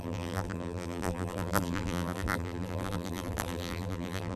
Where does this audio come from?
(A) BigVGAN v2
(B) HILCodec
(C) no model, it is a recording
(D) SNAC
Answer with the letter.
A